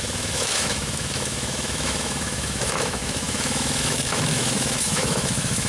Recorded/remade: remade